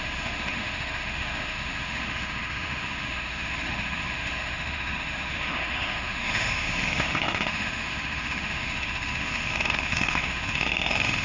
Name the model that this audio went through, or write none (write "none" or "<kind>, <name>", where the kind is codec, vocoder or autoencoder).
autoencoder, DAC-VAE